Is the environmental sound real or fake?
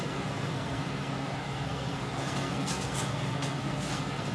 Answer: fake